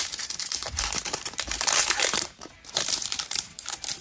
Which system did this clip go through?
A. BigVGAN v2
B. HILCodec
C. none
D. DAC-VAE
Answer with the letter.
A